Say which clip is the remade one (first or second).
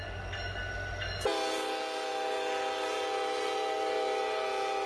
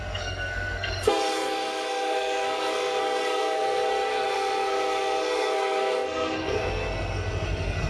second